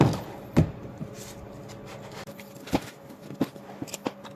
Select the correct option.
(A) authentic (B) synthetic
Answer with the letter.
A